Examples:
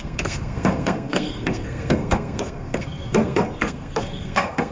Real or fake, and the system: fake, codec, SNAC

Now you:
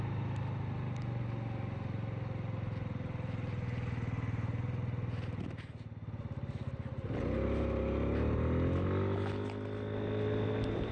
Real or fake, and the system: real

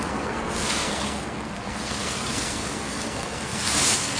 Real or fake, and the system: fake, codec, SNAC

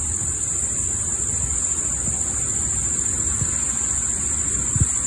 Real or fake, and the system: real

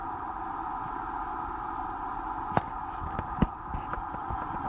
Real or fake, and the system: real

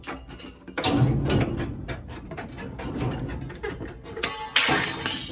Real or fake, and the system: real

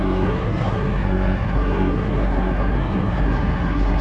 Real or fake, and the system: fake, codec, SNAC